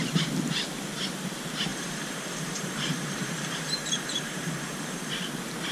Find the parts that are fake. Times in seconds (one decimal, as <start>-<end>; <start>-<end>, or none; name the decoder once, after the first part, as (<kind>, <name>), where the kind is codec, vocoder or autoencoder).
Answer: 1.7-5.1 (vocoder, BigVGAN v2)